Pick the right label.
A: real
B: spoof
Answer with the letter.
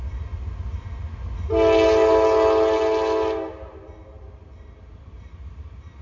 A